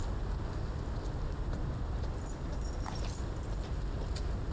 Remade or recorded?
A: recorded